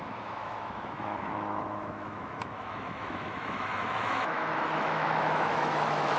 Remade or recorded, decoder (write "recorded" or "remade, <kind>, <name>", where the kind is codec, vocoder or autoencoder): remade, autoencoder, DAC-VAE